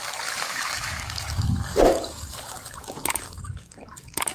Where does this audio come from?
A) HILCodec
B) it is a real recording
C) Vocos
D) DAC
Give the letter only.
D